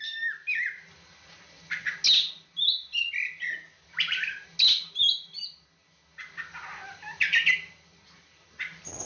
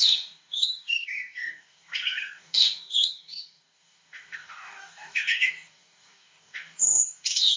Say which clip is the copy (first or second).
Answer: second